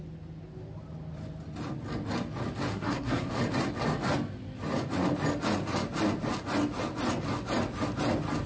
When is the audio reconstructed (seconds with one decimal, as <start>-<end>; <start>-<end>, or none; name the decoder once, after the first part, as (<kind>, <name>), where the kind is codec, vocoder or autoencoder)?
2.7-3.3 (codec, SNAC)